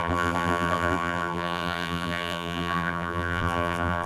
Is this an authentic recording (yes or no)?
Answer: no